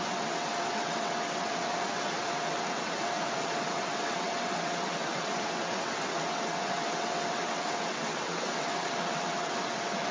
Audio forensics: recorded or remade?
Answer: remade